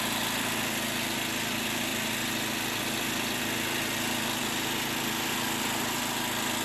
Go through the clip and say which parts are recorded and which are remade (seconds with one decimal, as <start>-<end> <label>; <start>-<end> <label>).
0.0-6.6 recorded